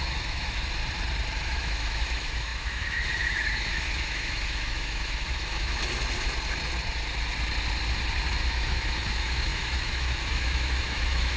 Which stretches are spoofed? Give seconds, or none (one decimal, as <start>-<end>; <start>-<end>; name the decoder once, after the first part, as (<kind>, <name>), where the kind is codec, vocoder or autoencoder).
0.0-0.8 (autoencoder, DAC-VAE); 1.3-5.8; 8.3-11.4